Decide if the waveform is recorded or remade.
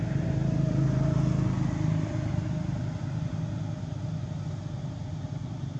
recorded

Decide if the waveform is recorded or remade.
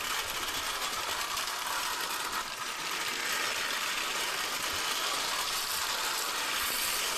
recorded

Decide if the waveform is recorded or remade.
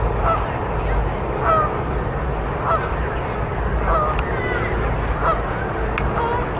recorded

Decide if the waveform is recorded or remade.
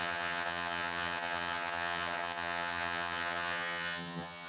remade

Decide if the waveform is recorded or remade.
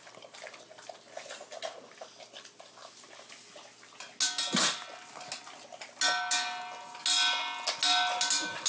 recorded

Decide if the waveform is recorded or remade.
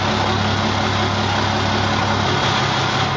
recorded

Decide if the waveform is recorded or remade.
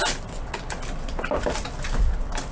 remade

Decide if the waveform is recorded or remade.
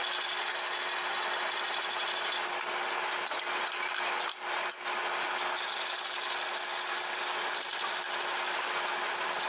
remade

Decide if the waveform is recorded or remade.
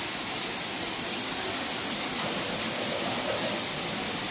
remade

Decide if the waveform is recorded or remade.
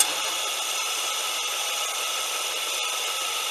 recorded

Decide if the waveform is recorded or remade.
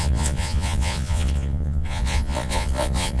remade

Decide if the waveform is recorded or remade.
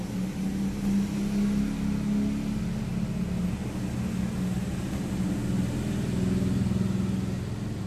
recorded